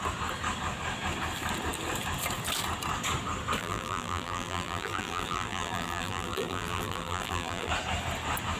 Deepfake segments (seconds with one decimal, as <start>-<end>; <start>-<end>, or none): 3.6-7.7